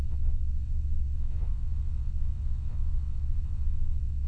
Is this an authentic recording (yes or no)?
no